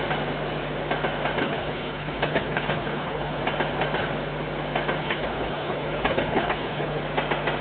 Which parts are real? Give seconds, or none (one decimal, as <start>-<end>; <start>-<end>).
0.0-1.4; 3.4-5.0; 7.0-7.6

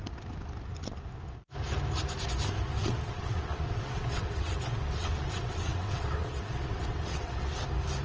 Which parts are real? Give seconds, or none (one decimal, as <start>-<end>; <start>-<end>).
0.0-2.8; 7.6-8.0

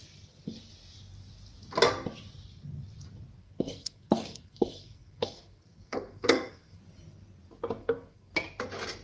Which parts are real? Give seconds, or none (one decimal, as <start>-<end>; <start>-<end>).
0.0-3.4; 6.8-7.8; 8.3-9.0

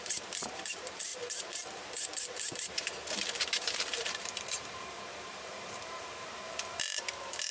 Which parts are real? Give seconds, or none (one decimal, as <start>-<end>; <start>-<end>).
none

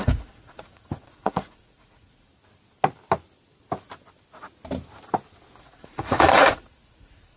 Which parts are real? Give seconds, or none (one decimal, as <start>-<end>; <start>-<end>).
2.3-5.6

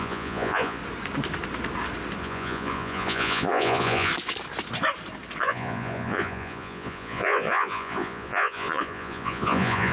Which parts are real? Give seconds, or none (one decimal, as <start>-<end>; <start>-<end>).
0.8-2.2; 4.1-5.4